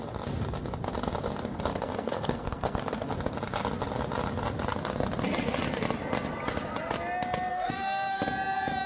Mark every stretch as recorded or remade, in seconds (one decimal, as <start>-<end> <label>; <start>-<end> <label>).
0.0-1.7 recorded; 1.7-3.1 remade; 3.1-7.5 recorded; 7.5-8.2 remade; 8.2-8.9 recorded